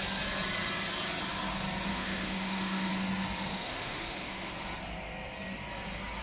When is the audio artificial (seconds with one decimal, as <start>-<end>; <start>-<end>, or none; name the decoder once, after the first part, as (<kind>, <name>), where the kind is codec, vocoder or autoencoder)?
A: 1.9-2.9 (autoencoder, DAC-VAE); 3.5-4.5